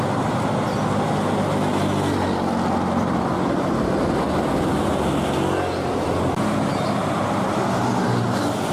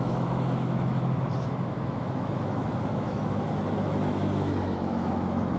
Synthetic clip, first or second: second